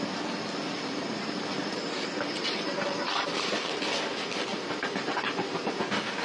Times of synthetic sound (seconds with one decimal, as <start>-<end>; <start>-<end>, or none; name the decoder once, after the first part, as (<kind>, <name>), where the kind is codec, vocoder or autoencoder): 0.8-3.8 (vocoder, BigVGAN v2); 4.5-5.6